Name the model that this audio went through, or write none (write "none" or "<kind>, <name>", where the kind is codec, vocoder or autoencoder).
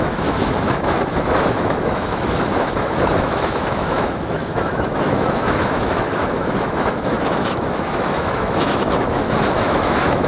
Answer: autoencoder, DAC-VAE